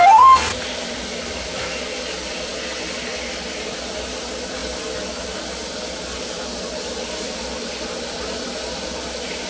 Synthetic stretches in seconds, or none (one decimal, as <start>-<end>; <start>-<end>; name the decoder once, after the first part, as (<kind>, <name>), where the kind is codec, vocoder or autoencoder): none